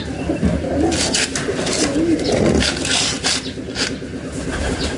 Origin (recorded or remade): recorded